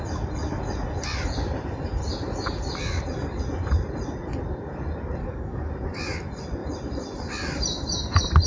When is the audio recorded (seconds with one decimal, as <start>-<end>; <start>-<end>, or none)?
0.0-5.2; 5.7-8.5